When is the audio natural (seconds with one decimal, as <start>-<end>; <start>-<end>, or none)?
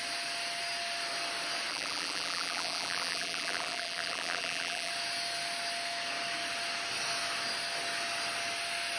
0.0-1.7; 4.9-9.0